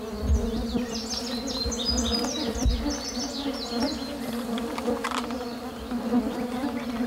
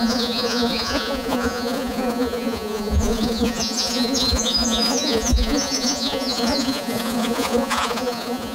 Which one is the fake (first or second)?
second